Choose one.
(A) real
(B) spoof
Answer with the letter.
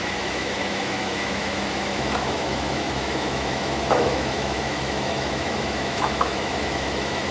B